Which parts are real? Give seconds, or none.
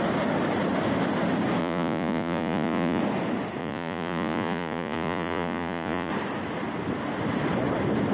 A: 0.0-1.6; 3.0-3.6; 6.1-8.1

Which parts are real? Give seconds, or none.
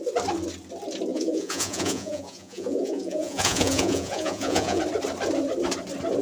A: 0.0-1.1; 4.8-6.2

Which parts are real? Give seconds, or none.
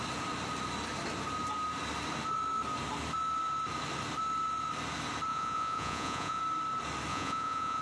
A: 0.0-5.3; 6.4-7.1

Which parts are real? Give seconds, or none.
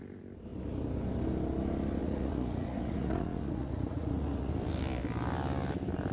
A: 0.0-2.0; 4.5-6.1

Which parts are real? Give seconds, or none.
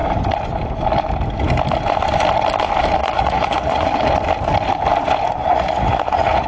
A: 0.0-3.0; 3.9-5.4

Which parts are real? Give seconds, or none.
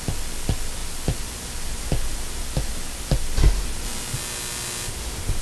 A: 0.0-5.4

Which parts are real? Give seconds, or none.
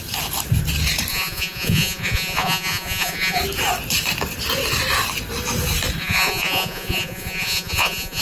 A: 0.0-1.1; 3.4-6.0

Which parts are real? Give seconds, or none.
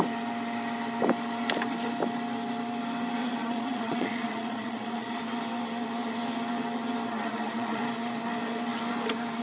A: 0.0-3.2; 5.2-7.1; 7.8-9.4